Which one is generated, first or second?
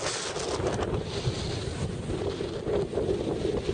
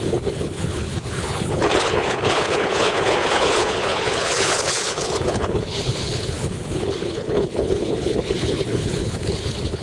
second